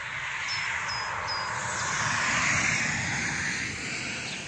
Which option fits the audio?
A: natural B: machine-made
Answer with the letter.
A